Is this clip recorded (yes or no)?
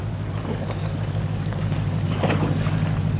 no